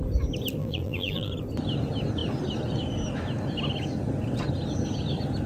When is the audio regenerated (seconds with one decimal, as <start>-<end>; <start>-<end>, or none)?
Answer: 0.6-1.3